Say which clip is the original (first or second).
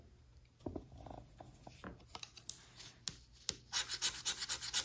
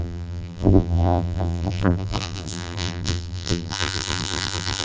first